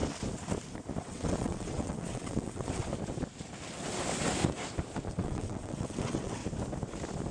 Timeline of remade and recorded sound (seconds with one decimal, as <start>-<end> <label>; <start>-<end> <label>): 0.0-1.0 recorded; 1.0-2.9 remade; 2.9-5.1 recorded; 5.1-6.4 remade; 6.4-7.3 recorded